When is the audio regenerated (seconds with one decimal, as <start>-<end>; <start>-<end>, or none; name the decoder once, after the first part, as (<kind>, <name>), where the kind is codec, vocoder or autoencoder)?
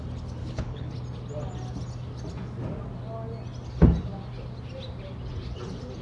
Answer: 0.4-0.9 (codec, HILCodec)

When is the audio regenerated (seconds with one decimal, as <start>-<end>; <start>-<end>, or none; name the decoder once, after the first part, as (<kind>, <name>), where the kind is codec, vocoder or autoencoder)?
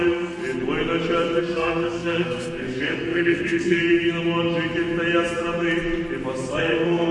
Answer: 0.0-0.4 (codec, SNAC); 1.4-3.8; 6.5-7.1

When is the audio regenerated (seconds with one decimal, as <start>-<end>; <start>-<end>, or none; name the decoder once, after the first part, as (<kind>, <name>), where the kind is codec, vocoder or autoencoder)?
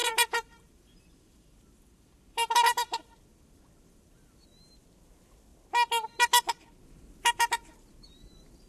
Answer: 0.0-4.6 (vocoder, BigVGAN v2)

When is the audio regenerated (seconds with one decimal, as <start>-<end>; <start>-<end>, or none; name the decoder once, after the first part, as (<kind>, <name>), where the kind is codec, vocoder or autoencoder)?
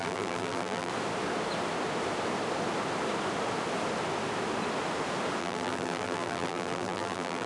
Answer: 0.0-0.9 (vocoder, BigVGAN v2); 5.4-7.5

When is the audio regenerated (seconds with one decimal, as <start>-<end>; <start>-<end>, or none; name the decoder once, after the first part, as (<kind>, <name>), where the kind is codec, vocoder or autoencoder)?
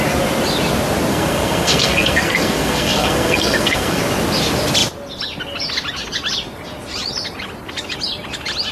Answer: 1.1-4.0 (codec, SNAC)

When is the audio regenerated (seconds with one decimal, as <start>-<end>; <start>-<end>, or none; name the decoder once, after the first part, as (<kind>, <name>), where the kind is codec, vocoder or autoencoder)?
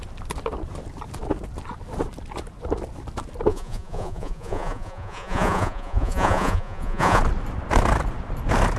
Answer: 3.5-7.2 (vocoder, Vocos)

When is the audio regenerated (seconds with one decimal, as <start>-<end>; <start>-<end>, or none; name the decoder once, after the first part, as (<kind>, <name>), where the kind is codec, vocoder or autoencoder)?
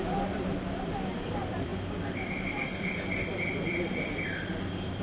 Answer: 0.0-1.7 (vocoder, BigVGAN v2); 2.9-5.0